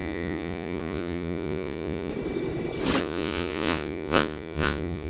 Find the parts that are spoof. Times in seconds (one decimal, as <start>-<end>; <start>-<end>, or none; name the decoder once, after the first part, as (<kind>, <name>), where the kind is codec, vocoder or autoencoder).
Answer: 0.0-2.1 (vocoder, Vocos); 3.0-5.1